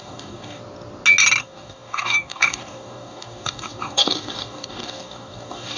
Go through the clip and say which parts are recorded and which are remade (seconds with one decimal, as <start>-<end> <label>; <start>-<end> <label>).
0.0-0.6 remade; 0.6-1.4 recorded; 1.4-5.8 remade